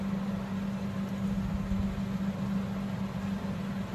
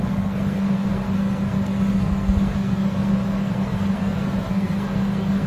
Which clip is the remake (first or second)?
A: second